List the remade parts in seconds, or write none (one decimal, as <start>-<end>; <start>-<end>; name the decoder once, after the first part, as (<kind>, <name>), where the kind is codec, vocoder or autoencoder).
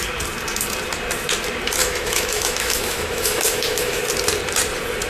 1.8-4.0 (autoencoder, DAC-VAE)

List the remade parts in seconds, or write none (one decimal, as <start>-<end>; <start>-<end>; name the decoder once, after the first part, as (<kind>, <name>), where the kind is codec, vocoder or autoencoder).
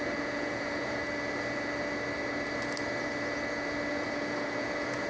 0.0-1.0 (vocoder, Vocos); 3.9-5.1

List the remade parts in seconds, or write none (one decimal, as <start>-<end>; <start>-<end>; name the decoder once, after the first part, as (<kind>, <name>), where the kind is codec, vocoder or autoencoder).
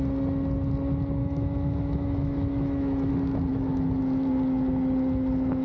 1.2-3.1 (autoencoder, DAC-VAE); 3.5-4.0